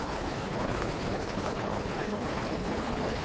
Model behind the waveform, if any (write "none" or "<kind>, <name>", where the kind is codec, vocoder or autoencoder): codec, HILCodec